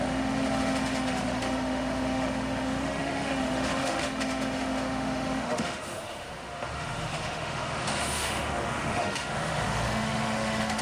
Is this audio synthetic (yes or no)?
yes